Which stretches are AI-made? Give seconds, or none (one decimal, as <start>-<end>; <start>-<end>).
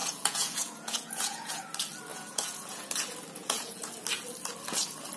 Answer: 0.0-1.6; 2.1-2.9; 3.4-3.9